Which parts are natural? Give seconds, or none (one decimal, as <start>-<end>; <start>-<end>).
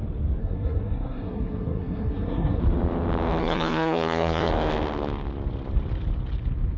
0.0-0.4; 2.6-3.4; 4.5-6.8